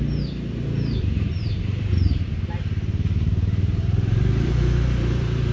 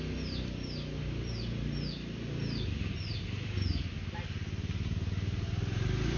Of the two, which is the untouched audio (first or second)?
second